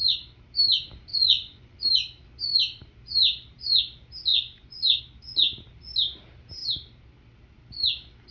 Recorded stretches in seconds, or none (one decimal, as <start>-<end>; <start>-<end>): 0.0-1.1; 1.8-4.3; 5.0-8.3